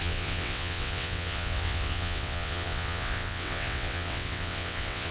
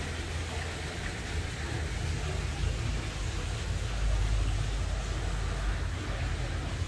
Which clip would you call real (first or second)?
second